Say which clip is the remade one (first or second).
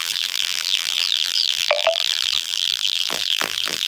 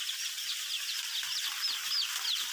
first